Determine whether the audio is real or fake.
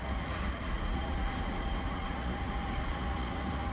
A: fake